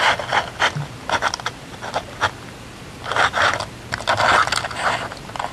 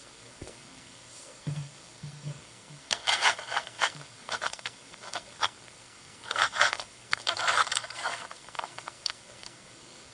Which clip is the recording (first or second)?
first